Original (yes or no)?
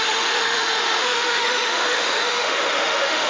no